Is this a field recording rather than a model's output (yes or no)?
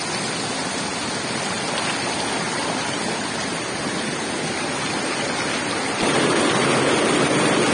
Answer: yes